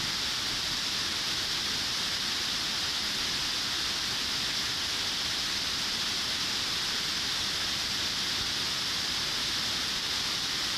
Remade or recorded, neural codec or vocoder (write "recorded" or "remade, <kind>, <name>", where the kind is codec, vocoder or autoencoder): recorded